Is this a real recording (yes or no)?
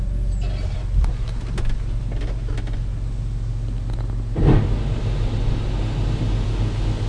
yes